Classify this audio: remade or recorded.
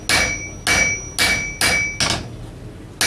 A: recorded